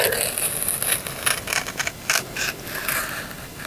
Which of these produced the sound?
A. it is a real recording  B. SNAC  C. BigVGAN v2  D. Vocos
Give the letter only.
A